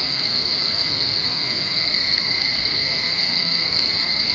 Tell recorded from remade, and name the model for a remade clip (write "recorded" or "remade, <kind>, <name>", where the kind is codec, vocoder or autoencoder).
remade, codec, SNAC